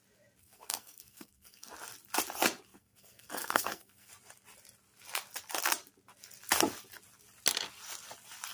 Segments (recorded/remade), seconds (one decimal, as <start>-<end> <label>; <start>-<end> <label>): 0.0-0.4 recorded; 0.4-1.7 remade; 1.7-2.7 recorded; 2.7-4.1 remade; 4.1-8.5 recorded